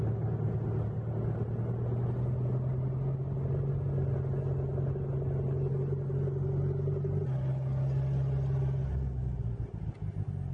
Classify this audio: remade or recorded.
recorded